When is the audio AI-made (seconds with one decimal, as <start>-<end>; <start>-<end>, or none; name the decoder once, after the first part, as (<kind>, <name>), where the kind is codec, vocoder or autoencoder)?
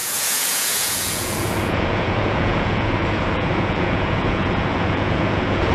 0.0-5.7 (vocoder, Vocos)